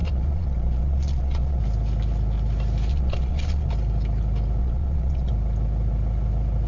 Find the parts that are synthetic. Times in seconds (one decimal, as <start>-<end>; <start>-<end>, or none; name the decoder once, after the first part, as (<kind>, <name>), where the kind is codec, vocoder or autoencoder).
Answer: 0.0-1.6 (vocoder, Vocos); 2.9-3.7; 4.6-5.3